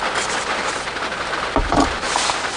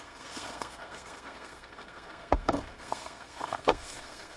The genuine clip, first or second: first